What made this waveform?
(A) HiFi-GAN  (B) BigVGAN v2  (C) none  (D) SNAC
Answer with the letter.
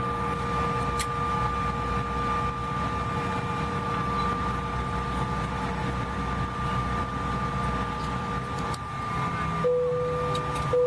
C